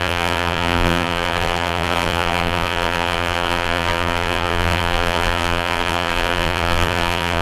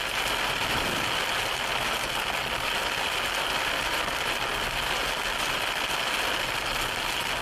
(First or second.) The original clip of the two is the second